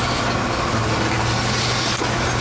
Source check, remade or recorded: recorded